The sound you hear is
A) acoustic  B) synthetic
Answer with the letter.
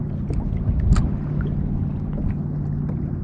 A